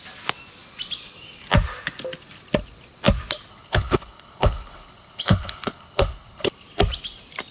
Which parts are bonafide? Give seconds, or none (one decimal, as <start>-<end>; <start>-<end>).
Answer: 0.0-3.5; 6.5-7.5